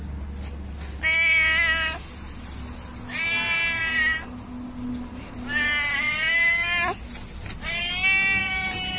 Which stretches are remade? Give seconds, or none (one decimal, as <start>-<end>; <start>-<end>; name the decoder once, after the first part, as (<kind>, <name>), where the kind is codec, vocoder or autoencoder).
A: 8.4-9.0 (vocoder, BigVGAN v2)